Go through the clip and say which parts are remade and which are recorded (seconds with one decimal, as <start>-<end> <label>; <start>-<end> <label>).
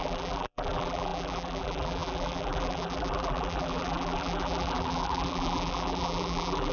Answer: 0.0-6.7 remade